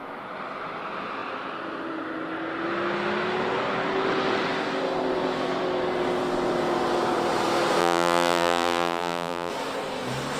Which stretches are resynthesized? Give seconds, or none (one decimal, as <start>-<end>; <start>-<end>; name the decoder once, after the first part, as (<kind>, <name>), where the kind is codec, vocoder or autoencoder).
7.8-9.5 (vocoder, BigVGAN v2)